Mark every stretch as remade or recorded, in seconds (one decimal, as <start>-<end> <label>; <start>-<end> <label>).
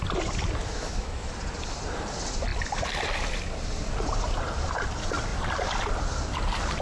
0.0-0.6 recorded; 0.6-1.3 remade; 1.3-6.8 recorded